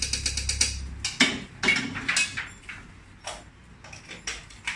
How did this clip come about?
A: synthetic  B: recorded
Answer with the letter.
B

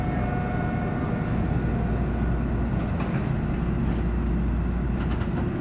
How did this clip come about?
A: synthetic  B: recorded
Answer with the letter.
B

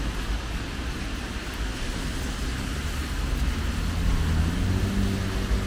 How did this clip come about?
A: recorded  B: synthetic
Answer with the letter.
A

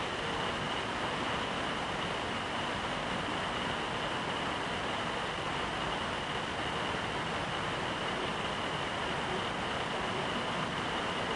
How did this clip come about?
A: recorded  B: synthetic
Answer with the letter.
A